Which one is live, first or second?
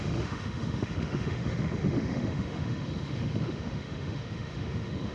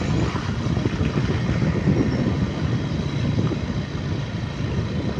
second